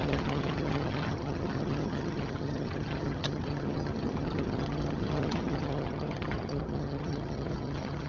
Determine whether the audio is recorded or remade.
remade